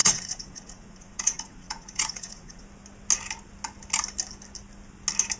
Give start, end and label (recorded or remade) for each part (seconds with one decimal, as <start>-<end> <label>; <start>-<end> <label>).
0.0-2.6 remade; 2.6-5.4 recorded